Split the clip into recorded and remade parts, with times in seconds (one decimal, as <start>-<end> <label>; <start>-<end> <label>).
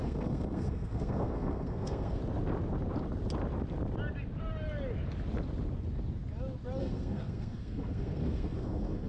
0.0-2.2 remade; 2.2-6.8 recorded; 6.8-9.1 remade